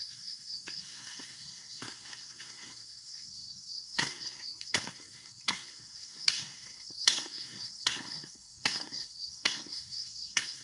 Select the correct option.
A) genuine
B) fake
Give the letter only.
B